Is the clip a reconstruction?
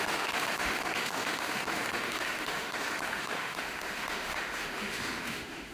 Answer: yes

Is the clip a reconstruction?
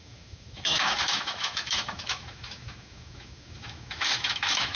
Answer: yes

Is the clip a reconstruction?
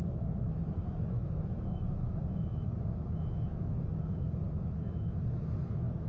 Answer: yes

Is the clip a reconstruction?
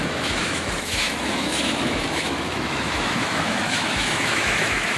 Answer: yes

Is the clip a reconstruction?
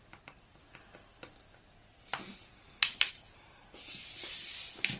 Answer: no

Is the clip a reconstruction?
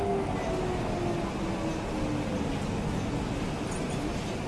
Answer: no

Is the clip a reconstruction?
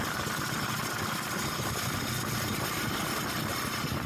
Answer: no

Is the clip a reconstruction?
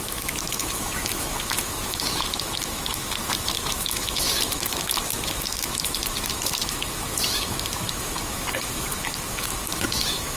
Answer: yes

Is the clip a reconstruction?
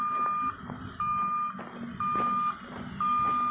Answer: no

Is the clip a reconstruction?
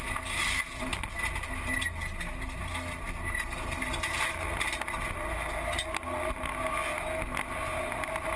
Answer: no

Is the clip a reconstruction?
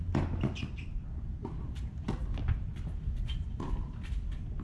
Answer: no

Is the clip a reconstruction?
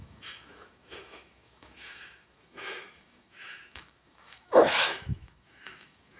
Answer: yes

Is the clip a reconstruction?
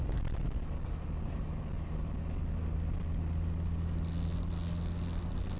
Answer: no